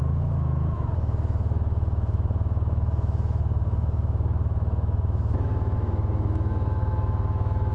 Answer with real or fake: fake